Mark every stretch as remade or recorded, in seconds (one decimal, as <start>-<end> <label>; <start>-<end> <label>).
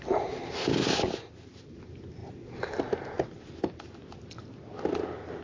0.0-5.4 recorded